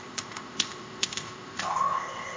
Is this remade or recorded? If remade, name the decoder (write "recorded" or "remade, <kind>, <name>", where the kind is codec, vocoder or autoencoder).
remade, codec, ZipCodec